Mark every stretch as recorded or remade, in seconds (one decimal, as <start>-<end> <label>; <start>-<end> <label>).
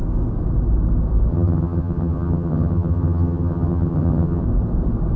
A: 0.0-1.3 recorded; 1.3-4.4 remade; 4.4-5.2 recorded